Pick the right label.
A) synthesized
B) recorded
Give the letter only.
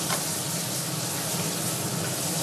B